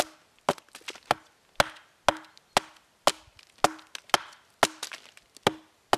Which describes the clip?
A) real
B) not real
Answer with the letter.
A